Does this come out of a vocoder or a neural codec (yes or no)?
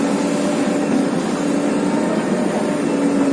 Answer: no